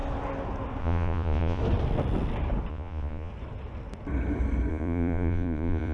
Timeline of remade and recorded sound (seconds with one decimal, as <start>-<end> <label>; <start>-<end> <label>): 0.0-0.8 recorded; 0.8-1.6 remade; 1.6-2.7 recorded; 2.7-3.3 remade; 3.3-4.7 recorded; 4.7-5.9 remade